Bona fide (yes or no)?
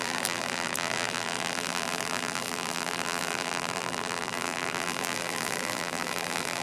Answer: no